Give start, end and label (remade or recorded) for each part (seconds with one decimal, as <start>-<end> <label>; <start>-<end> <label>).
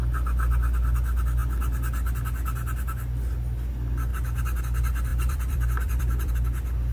0.0-5.1 recorded; 5.1-6.3 remade; 6.3-6.9 recorded